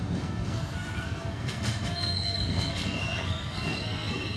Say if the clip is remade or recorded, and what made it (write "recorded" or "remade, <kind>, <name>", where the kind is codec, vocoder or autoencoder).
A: remade, codec, SNAC